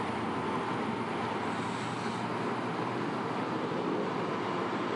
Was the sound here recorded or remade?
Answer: recorded